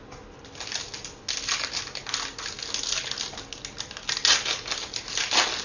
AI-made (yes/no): no